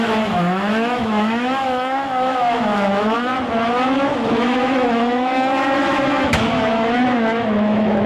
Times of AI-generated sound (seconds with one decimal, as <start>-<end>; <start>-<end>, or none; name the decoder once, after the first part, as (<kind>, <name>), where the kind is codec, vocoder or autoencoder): 0.0-3.3 (autoencoder, DAC-VAE); 4.4-8.1